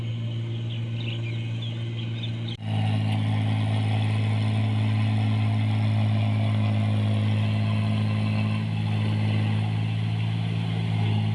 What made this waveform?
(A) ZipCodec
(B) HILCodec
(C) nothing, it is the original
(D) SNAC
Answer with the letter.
C